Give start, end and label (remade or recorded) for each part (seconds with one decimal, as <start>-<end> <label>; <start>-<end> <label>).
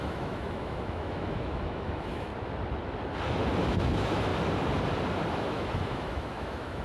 0.0-2.3 remade; 2.3-3.6 recorded; 3.6-4.3 remade; 4.3-5.3 recorded; 5.3-6.8 remade